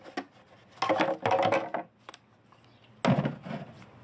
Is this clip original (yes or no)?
yes